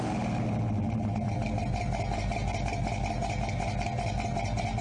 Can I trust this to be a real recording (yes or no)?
yes